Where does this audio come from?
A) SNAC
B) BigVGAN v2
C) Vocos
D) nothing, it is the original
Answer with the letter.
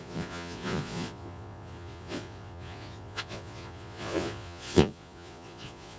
C